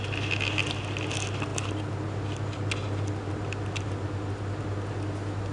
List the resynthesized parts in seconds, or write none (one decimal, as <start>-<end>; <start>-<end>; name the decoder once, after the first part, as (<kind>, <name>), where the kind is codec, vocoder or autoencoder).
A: none